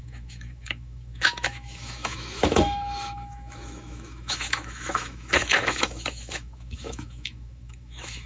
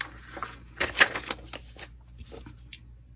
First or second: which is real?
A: second